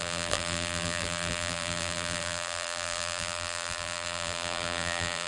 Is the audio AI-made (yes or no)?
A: yes